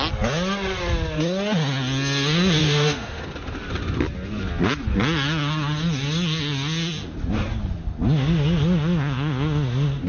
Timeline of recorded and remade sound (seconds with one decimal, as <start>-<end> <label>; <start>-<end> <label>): 0.0-2.6 recorded; 2.6-3.2 remade; 3.2-10.1 recorded